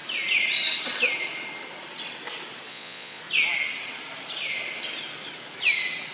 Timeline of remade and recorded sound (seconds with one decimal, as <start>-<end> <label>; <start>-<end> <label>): 0.0-2.7 recorded; 2.7-3.2 remade; 3.2-6.1 recorded